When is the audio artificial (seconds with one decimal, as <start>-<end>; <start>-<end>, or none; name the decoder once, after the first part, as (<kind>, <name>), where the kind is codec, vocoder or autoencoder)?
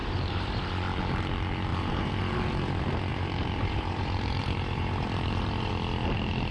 0.0-0.7 (vocoder, BigVGAN v2); 1.7-2.2; 3.1-5.7